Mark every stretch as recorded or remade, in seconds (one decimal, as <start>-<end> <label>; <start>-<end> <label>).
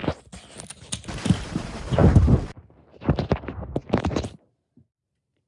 0.0-1.4 recorded; 1.4-3.8 remade; 3.8-4.4 recorded; 4.4-5.5 remade